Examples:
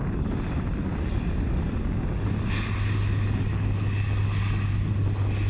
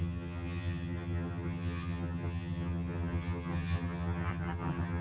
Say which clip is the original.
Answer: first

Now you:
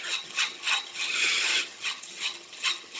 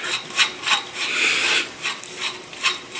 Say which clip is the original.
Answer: second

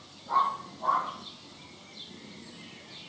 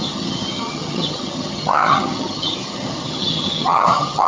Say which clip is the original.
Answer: first